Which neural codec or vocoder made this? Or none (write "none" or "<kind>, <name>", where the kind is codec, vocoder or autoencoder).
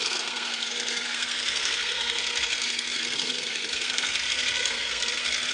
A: codec, SNAC